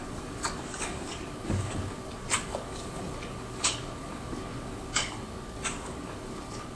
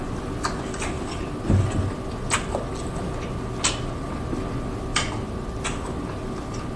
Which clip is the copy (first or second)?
first